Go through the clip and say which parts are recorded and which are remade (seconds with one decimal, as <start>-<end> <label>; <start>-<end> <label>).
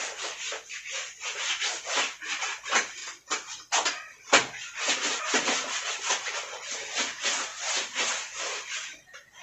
0.0-3.0 remade; 3.0-5.2 recorded; 5.2-7.5 remade; 7.5-8.1 recorded; 8.1-9.4 remade